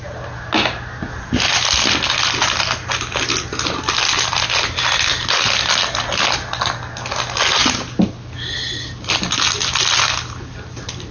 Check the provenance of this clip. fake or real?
real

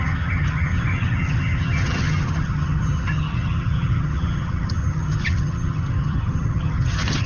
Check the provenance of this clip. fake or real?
fake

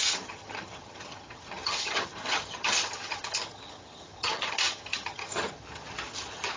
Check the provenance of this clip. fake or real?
fake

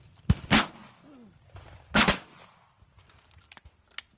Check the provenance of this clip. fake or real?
real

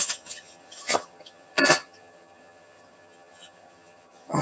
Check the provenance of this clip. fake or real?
fake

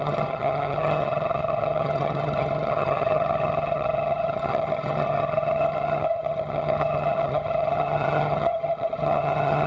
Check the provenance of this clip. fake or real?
fake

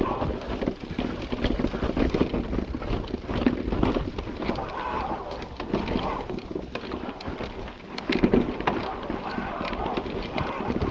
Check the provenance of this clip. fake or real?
real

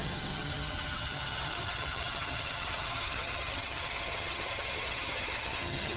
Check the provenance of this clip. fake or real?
fake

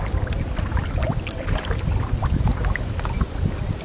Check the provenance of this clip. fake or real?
real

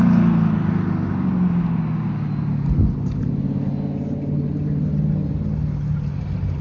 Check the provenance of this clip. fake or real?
real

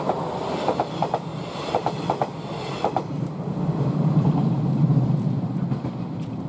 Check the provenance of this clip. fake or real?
real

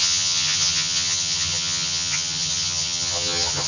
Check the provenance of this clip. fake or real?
fake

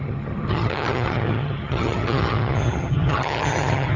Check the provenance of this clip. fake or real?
fake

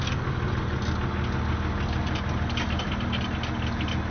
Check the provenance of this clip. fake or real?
real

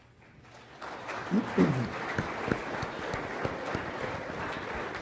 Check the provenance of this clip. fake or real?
real